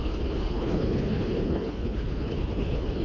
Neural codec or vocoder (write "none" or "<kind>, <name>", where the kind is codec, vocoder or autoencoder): codec, HILCodec